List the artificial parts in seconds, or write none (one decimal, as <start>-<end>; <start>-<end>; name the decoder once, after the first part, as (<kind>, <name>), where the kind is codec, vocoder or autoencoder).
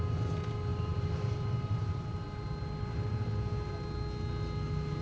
0.7-3.3 (vocoder, BigVGAN v2)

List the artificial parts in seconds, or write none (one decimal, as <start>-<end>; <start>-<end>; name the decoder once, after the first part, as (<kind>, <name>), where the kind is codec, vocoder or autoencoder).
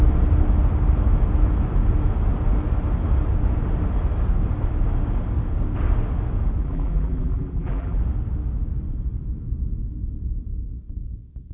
6.6-8.0 (vocoder, BigVGAN v2)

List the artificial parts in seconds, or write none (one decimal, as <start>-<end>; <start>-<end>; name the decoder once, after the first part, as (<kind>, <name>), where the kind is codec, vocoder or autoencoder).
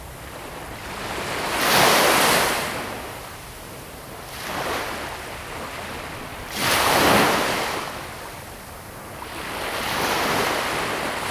6.3-7.8 (vocoder, BigVGAN v2)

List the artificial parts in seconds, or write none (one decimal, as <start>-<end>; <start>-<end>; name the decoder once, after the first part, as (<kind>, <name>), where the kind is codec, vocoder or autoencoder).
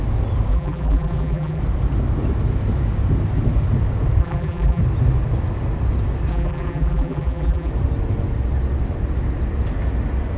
0.5-1.6 (vocoder, BigVGAN v2); 4.2-4.8; 6.3-7.7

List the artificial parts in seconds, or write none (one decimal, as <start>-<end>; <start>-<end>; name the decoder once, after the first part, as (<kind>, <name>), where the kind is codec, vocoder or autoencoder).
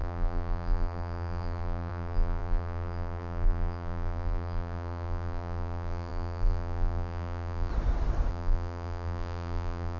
0.0-7.7 (vocoder, BigVGAN v2); 8.3-10.0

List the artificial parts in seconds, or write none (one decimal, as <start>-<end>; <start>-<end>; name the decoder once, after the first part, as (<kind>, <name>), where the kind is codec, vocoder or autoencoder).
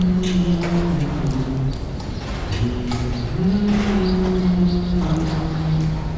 none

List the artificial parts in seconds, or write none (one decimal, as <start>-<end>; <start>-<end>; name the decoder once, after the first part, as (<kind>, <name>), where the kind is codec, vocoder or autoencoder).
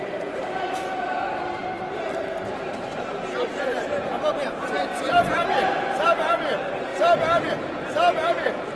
0.0-2.9 (vocoder, BigVGAN v2); 5.0-6.9; 7.5-8.8